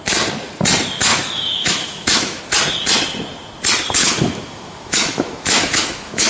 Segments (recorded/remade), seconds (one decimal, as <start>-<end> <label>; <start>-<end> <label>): 0.0-1.1 recorded; 1.1-2.4 remade; 2.4-4.0 recorded; 4.0-6.3 remade